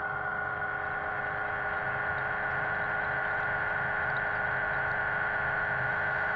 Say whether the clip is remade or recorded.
recorded